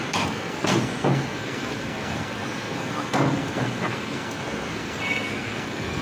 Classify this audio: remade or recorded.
remade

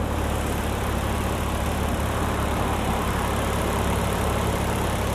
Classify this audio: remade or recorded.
remade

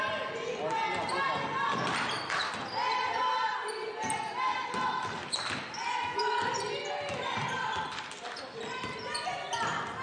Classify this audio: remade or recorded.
recorded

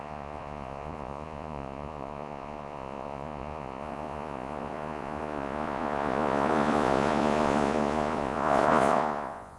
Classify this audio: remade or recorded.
remade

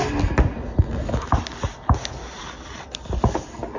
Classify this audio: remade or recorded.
recorded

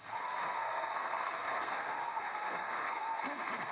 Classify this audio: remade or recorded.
remade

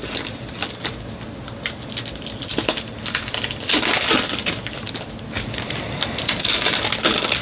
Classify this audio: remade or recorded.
recorded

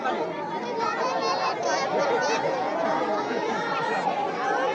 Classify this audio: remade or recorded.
recorded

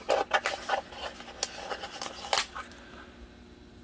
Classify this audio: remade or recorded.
recorded